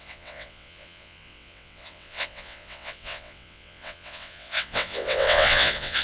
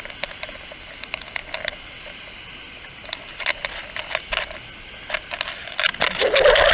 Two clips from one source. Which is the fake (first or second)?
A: first